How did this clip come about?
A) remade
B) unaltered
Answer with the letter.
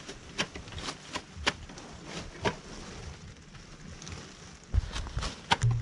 B